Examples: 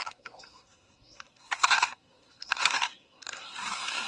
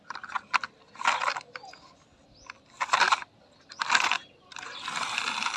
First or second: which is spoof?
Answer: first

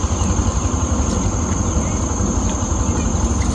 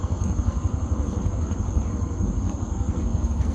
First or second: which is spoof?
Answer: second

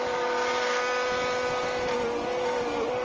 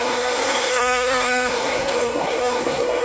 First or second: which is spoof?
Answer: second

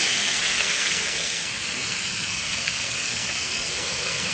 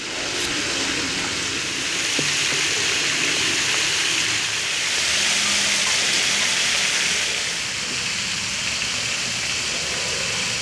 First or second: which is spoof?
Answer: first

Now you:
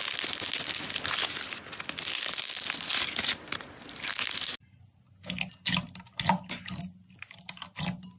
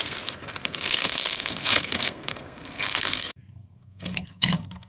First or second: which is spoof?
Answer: second